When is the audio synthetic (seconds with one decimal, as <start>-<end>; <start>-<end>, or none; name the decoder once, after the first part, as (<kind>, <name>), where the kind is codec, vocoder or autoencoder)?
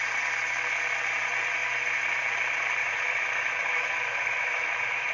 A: 2.8-5.1 (autoencoder, DAC-VAE)